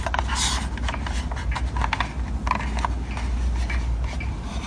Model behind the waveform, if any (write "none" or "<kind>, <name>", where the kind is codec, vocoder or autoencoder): none